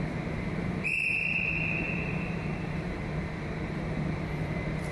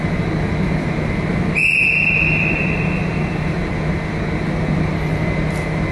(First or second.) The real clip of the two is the second